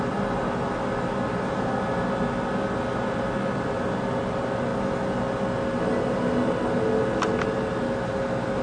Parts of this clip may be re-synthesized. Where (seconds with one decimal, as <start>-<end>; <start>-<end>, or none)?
none